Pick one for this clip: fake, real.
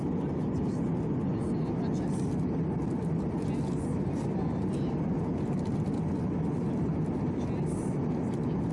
real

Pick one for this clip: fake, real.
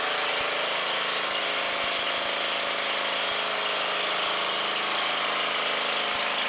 real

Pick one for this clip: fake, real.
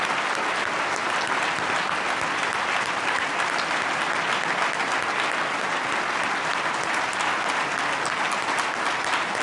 real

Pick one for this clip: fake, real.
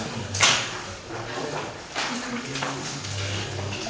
fake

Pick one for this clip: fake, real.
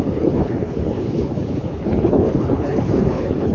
fake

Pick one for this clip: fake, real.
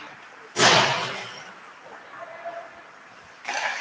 real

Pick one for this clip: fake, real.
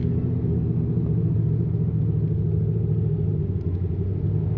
real